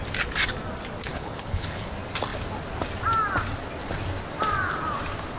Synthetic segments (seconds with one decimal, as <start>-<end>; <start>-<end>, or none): 1.1-1.9